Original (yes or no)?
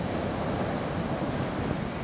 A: yes